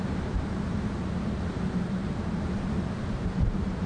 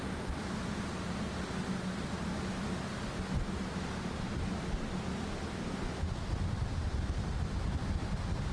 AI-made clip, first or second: first